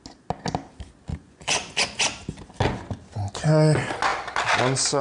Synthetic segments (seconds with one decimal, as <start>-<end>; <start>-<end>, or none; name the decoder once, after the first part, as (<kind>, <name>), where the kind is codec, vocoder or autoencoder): 1.1-2.0 (vocoder, Vocos)